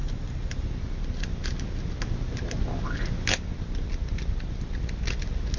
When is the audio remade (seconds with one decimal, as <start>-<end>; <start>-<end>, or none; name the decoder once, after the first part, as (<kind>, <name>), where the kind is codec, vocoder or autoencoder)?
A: 0.0-0.7 (vocoder, BigVGAN v2)